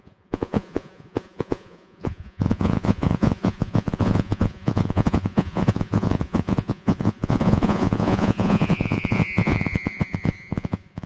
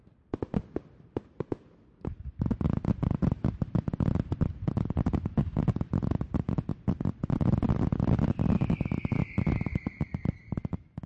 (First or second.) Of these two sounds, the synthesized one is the first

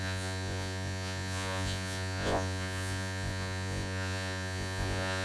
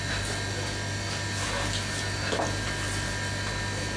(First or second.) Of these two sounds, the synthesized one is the first